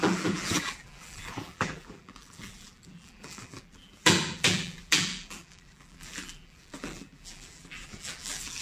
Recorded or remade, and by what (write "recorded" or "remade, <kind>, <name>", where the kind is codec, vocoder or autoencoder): remade, vocoder, BigVGAN v2